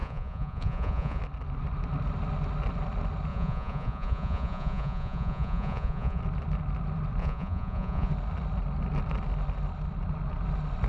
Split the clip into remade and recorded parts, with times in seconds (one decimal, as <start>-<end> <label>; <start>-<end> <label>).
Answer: 0.0-1.2 remade; 1.2-3.3 recorded; 3.3-6.2 remade; 6.2-7.2 recorded; 7.2-8.1 remade; 8.1-10.9 recorded